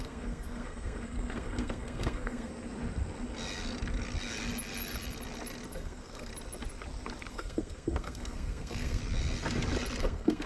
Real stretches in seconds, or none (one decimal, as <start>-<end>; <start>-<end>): 2.5-5.7; 6.3-7.3; 9.0-10.0